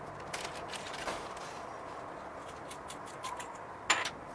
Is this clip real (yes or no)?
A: yes